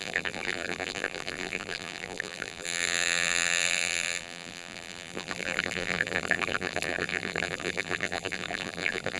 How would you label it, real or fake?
fake